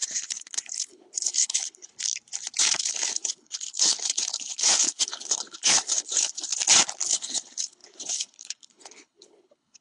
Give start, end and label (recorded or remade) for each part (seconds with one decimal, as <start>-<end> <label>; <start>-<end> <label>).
0.0-1.9 remade; 1.9-2.6 recorded; 2.6-6.5 remade; 6.5-7.1 recorded; 7.1-9.8 remade